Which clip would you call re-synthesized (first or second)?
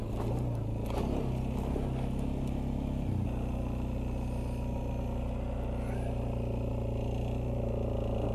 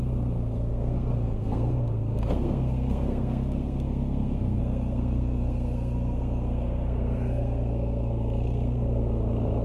second